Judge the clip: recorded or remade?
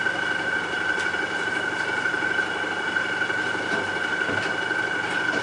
recorded